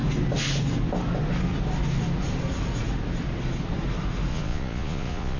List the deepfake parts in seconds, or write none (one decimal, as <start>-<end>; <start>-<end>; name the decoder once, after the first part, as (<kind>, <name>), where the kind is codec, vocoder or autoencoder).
4.3-5.4 (vocoder, Vocos)